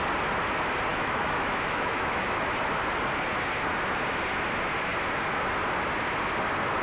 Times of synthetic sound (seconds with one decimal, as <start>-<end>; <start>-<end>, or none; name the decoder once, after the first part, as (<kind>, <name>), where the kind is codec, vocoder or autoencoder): 0.9-2.4 (autoencoder, DAC-VAE)